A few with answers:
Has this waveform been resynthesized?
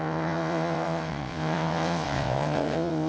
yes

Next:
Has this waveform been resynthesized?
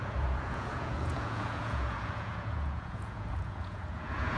yes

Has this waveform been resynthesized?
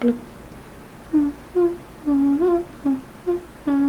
no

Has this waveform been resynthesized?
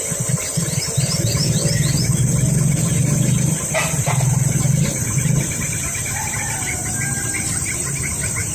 no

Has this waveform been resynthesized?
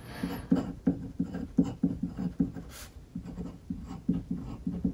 no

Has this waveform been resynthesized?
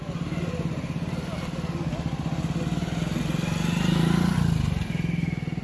no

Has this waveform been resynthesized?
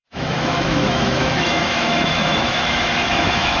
yes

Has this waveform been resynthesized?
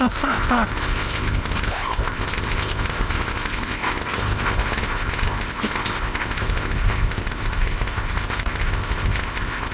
yes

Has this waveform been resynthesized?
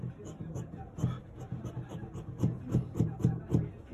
no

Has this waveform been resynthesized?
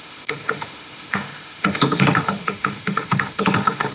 yes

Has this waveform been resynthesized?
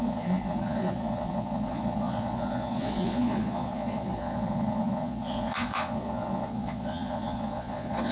yes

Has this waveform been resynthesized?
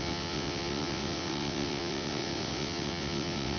yes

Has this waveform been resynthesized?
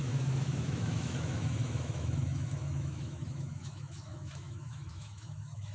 yes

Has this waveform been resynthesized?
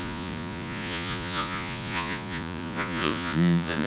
yes